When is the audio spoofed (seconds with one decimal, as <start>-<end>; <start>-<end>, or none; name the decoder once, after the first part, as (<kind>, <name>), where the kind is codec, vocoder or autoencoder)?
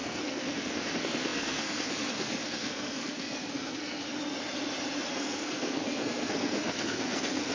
0.0-4.0 (codec, SNAC); 5.1-7.5